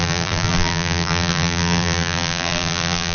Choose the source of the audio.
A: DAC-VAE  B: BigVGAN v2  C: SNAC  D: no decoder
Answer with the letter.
B